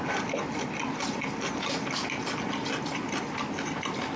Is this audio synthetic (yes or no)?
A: no